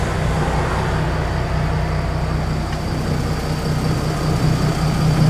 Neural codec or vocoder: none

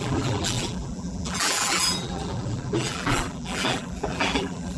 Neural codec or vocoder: vocoder, BigVGAN v2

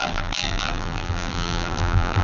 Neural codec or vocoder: vocoder, BigVGAN v2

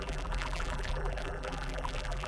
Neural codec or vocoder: vocoder, BigVGAN v2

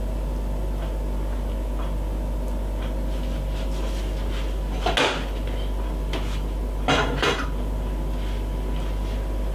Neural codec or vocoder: none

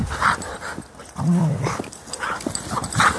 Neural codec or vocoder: none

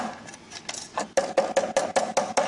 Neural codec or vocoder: none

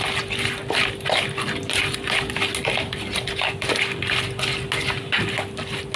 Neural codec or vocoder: none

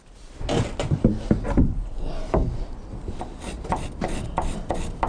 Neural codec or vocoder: none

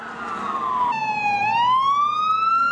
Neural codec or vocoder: none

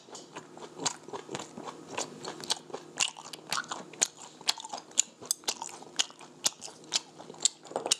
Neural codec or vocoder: none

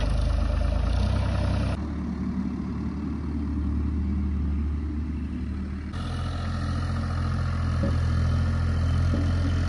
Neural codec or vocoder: none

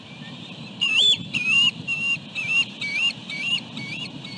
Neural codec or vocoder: vocoder, BigVGAN v2